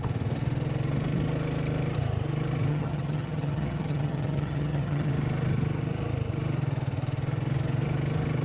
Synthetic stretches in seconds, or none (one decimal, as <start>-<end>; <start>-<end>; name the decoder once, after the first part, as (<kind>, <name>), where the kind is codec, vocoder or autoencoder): 2.7-5.1 (vocoder, HiFi-GAN)